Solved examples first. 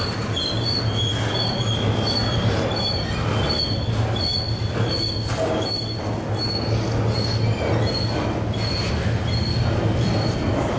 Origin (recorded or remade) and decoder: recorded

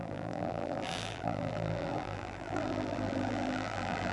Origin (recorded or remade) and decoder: remade, vocoder, BigVGAN v2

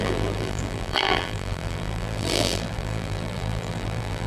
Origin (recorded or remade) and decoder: remade, vocoder, BigVGAN v2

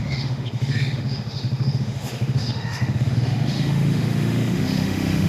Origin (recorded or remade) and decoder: remade, autoencoder, DAC-VAE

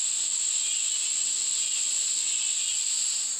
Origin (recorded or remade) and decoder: recorded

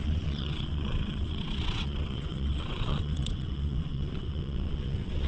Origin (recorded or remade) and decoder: remade, vocoder, WaveNeXt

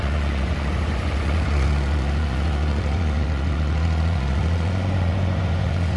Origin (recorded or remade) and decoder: remade, vocoder, Vocos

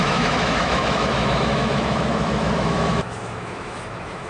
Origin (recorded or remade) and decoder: remade, autoencoder, DAC-VAE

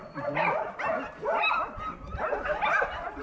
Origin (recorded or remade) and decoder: recorded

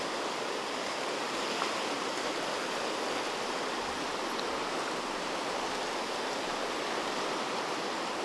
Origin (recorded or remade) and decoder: recorded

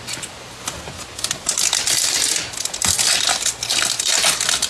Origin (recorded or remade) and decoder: recorded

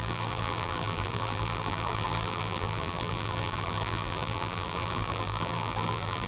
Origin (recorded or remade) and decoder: remade, vocoder, BigVGAN v2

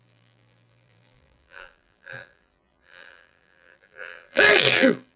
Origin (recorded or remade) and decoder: remade, vocoder, BigVGAN v2